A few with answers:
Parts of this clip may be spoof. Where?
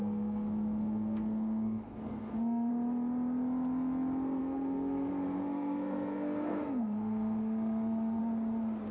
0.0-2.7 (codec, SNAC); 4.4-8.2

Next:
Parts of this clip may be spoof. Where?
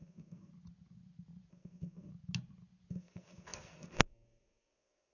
0.0-0.5 (codec, SNAC); 1.5-2.1; 2.9-5.1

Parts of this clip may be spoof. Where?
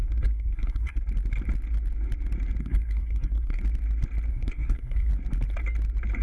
0.0-1.0 (codec, SNAC); 2.6-3.6; 4.3-5.1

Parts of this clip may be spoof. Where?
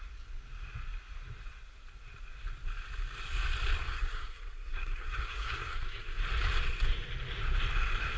3.9-6.2 (codec, SNAC)